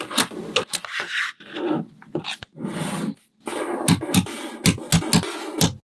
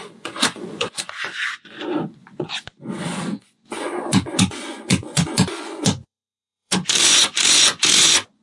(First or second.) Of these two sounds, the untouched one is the first